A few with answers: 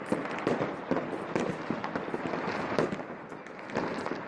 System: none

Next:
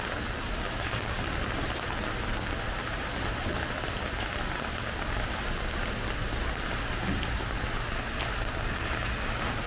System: none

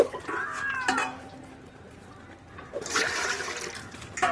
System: none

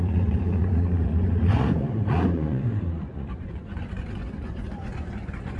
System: vocoder, Vocos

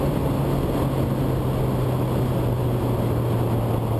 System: none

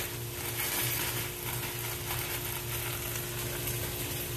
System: none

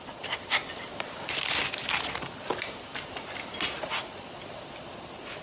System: none